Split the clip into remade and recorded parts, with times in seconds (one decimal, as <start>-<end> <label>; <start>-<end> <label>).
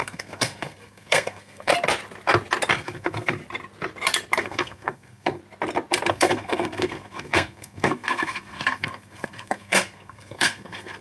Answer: 0.0-1.7 remade; 1.7-2.7 recorded; 2.7-3.4 remade; 3.4-4.4 recorded; 4.4-5.4 remade; 5.4-6.1 recorded; 6.1-11.0 remade